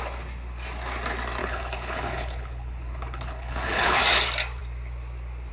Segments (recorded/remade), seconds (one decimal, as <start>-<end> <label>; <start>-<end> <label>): 0.0-1.4 recorded; 1.4-4.0 remade; 4.0-5.5 recorded